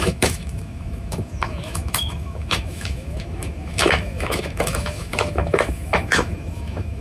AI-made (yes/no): yes